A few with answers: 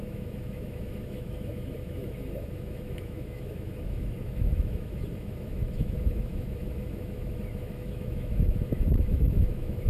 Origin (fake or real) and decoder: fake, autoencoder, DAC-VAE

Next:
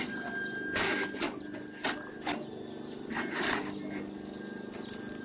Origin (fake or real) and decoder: real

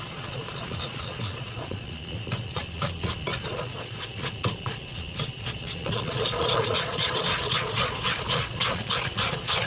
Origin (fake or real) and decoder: fake, vocoder, Vocos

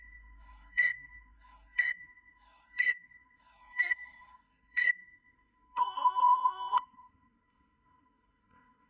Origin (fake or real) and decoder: fake, codec, SNAC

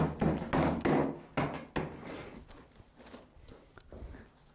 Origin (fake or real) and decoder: real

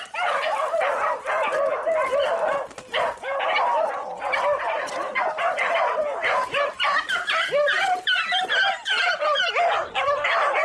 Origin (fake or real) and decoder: fake, vocoder, BigVGAN v2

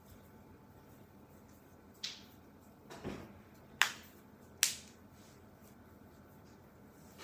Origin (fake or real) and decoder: real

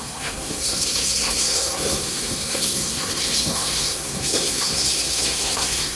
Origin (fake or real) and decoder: fake, codec, SNAC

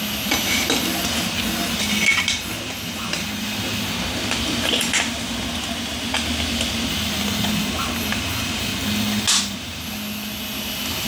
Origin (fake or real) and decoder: real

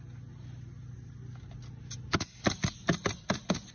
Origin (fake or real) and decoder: real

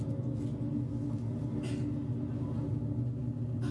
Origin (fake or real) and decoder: real